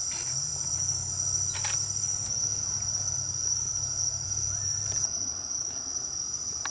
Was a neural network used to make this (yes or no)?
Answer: no